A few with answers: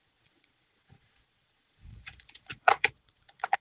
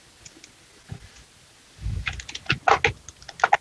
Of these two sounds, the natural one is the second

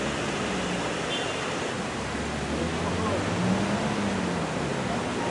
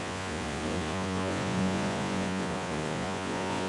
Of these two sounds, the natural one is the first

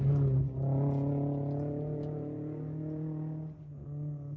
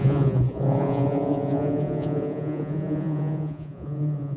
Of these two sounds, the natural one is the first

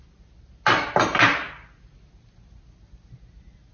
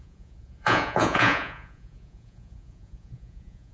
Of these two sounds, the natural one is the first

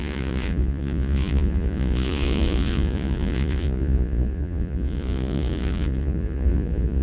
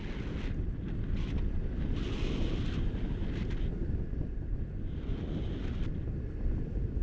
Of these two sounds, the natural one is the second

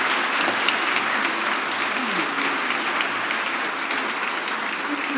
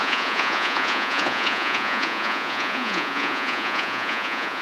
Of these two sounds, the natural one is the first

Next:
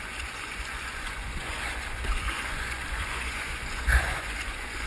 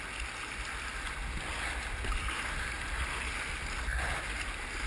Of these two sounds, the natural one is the second